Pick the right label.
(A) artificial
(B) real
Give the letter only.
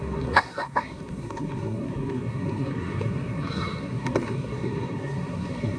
A